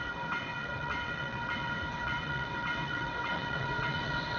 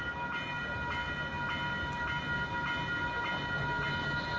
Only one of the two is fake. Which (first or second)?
first